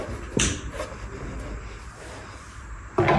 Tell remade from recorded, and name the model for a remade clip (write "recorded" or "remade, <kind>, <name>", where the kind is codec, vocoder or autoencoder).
recorded